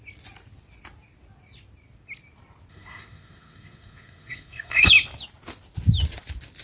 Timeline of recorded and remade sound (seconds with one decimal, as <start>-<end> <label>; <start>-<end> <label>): 0.0-2.7 recorded; 2.7-4.9 remade; 4.9-6.6 recorded